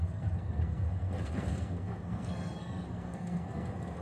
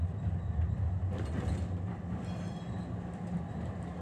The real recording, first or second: second